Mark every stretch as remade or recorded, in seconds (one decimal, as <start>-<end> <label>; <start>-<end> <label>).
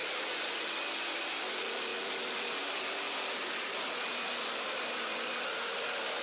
0.0-6.2 recorded